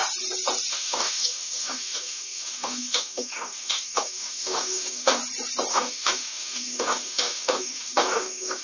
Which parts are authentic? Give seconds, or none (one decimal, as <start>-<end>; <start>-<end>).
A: 0.0-0.7; 5.2-5.7